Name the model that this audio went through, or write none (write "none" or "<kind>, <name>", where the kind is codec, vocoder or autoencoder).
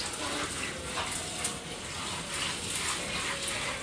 none